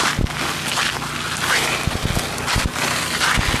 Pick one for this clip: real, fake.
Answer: real